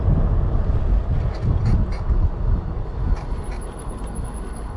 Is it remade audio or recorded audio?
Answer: recorded